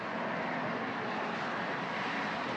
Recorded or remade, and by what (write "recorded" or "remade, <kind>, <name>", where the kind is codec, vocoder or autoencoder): recorded